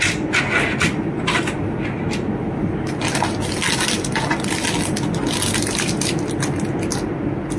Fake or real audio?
real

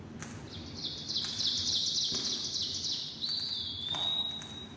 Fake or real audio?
real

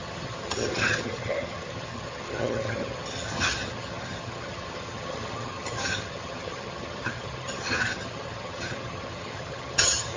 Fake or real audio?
fake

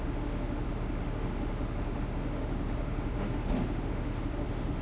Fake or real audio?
fake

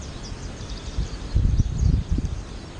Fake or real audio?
real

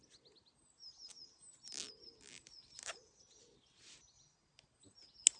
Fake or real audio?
real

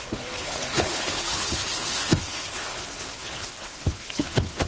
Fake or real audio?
fake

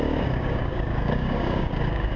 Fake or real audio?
fake